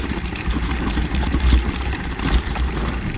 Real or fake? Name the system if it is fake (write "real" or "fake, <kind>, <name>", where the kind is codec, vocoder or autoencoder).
fake, vocoder, BigVGAN v2